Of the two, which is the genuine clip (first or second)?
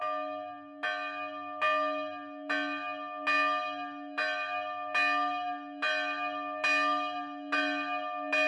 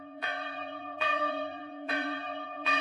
first